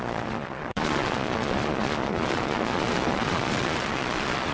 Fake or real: fake